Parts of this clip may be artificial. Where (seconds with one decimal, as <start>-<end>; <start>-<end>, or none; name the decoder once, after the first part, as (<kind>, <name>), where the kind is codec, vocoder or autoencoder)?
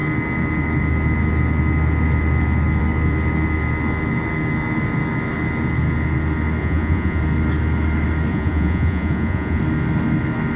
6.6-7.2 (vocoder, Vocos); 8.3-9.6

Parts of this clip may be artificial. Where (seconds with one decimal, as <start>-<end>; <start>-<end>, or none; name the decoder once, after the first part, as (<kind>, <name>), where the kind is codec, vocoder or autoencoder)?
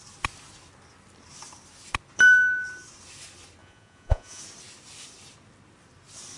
3.6-4.4 (vocoder, Vocos)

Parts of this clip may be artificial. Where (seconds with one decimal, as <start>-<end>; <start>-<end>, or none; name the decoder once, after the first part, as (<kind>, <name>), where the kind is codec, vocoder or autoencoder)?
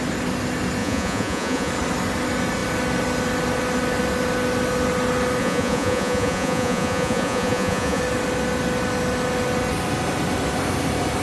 0.8-1.7 (vocoder, Vocos); 5.4-8.0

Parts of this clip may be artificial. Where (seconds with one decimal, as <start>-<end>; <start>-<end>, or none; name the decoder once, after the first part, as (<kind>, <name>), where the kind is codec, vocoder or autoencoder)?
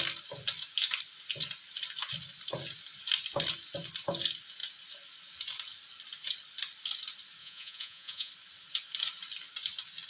7.4-8.3 (vocoder, Vocos)